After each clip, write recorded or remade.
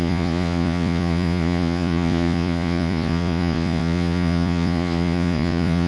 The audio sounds remade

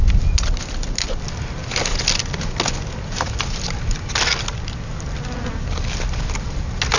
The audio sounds recorded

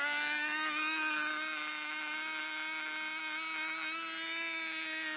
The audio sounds recorded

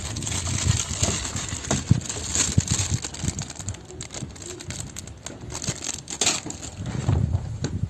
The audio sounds recorded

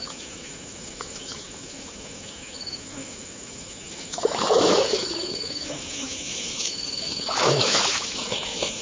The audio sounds remade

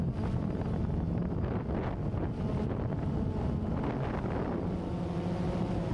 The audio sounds recorded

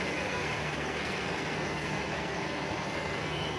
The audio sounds remade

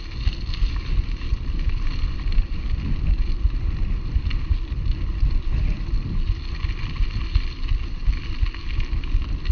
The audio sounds recorded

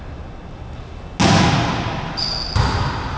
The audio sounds recorded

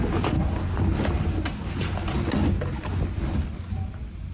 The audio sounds recorded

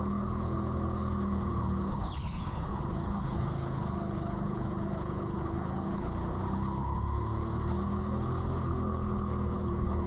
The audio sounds remade